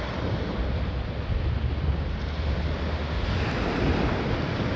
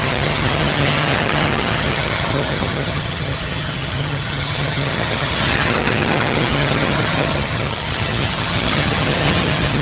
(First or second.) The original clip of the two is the first